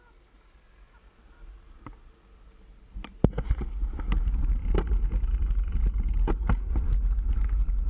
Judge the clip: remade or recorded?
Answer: recorded